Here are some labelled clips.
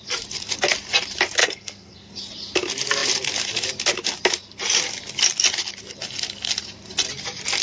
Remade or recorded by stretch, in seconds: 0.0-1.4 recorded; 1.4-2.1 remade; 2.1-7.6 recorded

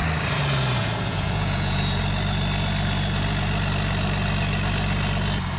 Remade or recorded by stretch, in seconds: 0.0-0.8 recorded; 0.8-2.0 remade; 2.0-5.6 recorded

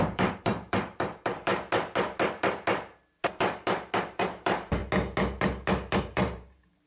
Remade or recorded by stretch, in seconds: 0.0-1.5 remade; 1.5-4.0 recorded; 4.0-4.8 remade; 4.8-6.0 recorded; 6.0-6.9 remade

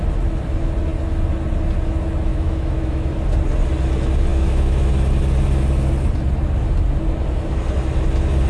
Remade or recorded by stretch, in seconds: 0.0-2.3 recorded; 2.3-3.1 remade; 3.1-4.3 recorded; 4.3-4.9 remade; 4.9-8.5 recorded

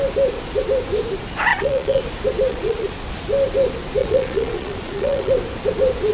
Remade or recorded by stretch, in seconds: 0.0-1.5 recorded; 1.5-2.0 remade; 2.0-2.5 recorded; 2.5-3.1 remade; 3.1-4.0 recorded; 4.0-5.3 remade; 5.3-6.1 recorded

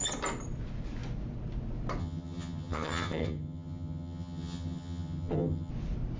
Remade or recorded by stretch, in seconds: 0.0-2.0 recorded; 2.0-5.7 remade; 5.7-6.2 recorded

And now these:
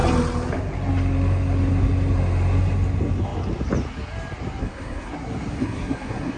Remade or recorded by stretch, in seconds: 0.0-4.6 recorded; 4.6-5.1 remade; 5.1-5.6 recorded; 5.6-6.4 remade